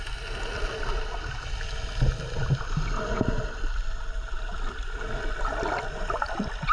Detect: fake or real real